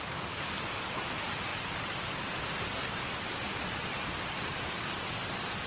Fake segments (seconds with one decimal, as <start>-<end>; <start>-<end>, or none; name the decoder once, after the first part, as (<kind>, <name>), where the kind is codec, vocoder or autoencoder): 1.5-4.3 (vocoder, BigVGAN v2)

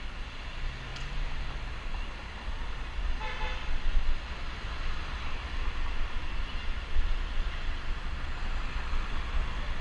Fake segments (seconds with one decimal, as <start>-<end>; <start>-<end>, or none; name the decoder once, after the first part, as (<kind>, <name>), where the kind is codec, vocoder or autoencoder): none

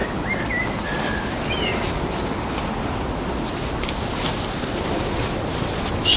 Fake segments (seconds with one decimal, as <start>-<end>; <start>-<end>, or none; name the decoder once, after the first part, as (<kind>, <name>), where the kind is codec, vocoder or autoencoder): none

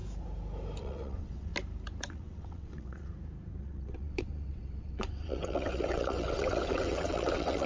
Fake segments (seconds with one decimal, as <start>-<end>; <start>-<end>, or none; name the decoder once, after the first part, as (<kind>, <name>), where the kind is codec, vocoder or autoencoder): 0.8-1.5 (vocoder, WaveNeXt); 2.1-3.1; 3.6-7.7

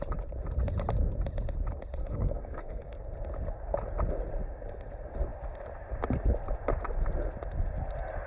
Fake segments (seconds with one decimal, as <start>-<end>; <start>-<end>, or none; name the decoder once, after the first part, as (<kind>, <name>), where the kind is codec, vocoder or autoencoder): 2.0-3.0 (codec, SNAC)

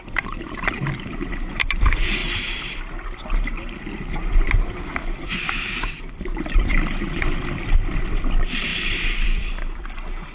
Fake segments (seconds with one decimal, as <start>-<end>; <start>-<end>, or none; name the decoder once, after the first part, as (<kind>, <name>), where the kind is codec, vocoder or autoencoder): 0.0-2.2 (vocoder, BigVGAN v2); 5.2-10.3

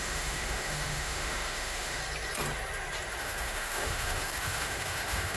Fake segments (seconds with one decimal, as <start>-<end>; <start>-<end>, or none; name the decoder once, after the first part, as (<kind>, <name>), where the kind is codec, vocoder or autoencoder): 0.0-2.0 (autoencoder, DAC-VAE); 3.2-5.4

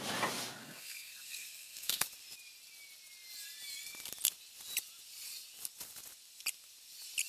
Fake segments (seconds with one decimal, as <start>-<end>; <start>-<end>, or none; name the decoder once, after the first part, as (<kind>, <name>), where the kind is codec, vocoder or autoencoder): 0.6-2.0 (codec, SNAC)